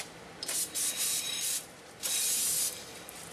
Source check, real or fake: real